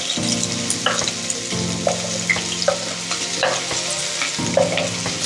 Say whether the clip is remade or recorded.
recorded